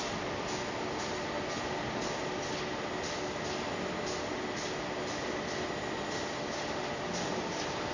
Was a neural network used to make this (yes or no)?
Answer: no